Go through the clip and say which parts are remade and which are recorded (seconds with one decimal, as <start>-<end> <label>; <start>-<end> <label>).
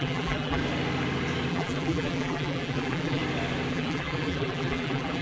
0.0-0.6 remade; 0.6-1.5 recorded; 1.5-3.2 remade; 3.2-3.7 recorded; 3.7-5.2 remade